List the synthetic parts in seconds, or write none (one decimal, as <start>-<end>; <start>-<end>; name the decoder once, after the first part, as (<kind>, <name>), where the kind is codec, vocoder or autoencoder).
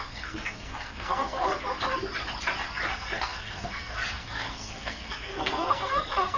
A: 0.0-1.5 (codec, SNAC); 2.9-6.4